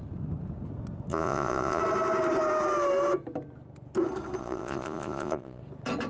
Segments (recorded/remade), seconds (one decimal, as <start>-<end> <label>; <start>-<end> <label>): 0.0-1.1 recorded; 1.1-1.8 remade; 1.8-4.4 recorded; 4.4-5.6 remade; 5.6-6.1 recorded